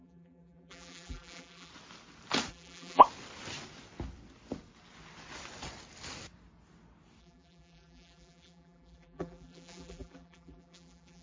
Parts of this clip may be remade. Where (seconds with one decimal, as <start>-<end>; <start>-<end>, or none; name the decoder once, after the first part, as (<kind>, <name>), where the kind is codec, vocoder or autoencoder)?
0.0-1.7 (vocoder, BigVGAN v2); 2.5-3.0; 7.2-11.2